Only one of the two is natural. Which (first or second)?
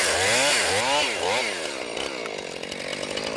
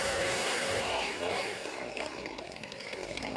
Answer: first